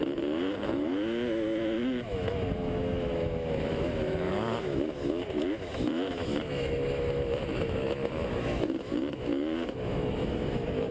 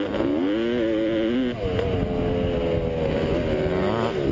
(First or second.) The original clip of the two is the second